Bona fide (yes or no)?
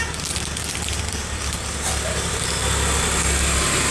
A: yes